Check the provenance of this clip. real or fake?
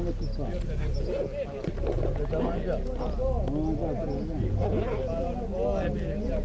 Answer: real